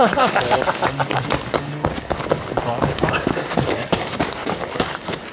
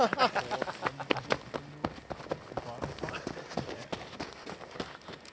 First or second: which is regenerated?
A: first